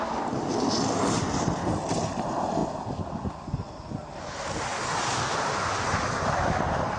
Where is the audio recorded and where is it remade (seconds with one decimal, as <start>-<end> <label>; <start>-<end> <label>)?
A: 0.0-7.0 recorded